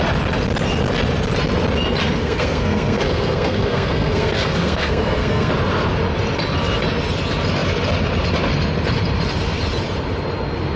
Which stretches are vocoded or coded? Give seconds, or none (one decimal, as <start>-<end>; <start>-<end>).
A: 2.2-5.5